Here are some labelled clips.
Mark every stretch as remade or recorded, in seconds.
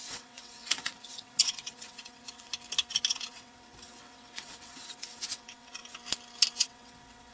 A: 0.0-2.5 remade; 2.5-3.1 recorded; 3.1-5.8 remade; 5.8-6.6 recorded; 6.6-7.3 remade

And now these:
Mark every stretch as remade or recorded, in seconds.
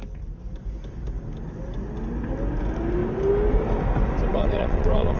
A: 0.0-4.3 recorded; 4.3-5.2 remade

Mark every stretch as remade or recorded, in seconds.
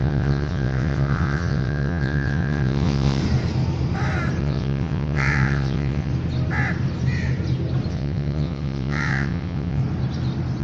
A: 0.0-3.2 remade; 3.2-4.4 recorded; 4.4-6.1 remade; 6.1-7.9 recorded; 7.9-9.8 remade; 9.8-10.6 recorded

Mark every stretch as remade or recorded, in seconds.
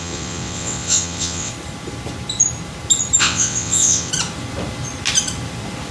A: 0.0-1.5 remade; 1.5-3.2 recorded; 3.2-4.1 remade; 4.1-5.9 recorded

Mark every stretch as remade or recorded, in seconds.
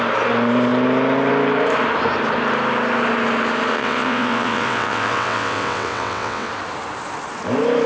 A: 0.0-3.7 recorded; 3.7-6.5 remade; 6.5-7.9 recorded